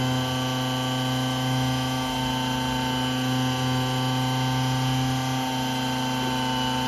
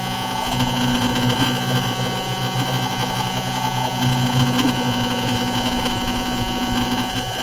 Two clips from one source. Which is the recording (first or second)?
first